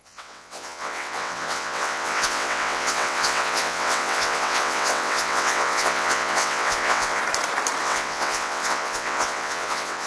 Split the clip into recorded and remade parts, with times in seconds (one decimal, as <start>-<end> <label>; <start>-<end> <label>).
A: 0.0-7.2 remade; 7.2-7.8 recorded; 7.8-10.1 remade

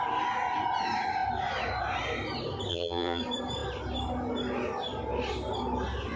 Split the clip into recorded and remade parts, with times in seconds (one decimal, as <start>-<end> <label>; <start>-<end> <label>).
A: 0.0-2.7 recorded; 2.7-3.2 remade; 3.2-6.2 recorded

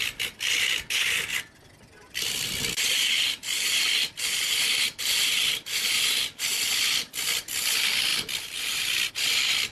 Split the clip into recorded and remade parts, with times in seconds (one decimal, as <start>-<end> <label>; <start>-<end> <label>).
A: 0.0-9.7 recorded

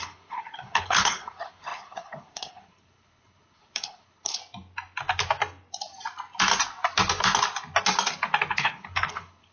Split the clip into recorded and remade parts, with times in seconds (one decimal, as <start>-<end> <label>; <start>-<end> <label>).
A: 0.0-4.4 remade; 4.4-8.6 recorded; 8.6-9.5 remade

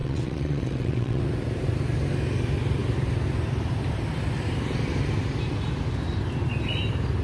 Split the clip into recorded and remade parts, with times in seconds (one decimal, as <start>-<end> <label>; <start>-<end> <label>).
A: 0.0-1.2 remade; 1.2-7.2 recorded